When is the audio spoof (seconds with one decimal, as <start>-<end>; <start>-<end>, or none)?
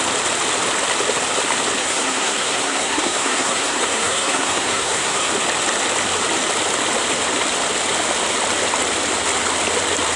1.8-5.3